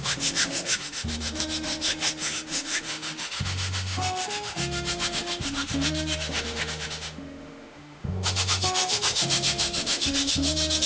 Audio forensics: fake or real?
fake